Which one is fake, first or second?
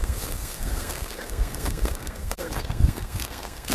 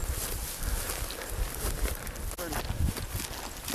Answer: first